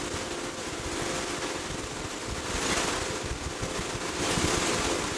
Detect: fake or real real